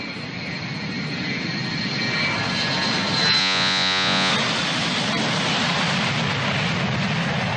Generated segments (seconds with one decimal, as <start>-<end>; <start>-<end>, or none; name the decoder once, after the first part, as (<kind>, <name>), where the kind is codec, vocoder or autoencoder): 3.4-4.3 (vocoder, Vocos)